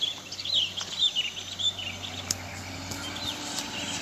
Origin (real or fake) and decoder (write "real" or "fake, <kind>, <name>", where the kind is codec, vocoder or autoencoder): real